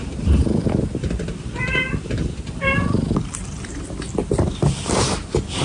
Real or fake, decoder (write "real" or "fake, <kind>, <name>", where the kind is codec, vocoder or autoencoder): fake, vocoder, BigVGAN v2